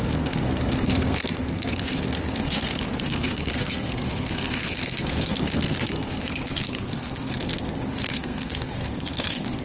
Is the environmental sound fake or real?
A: fake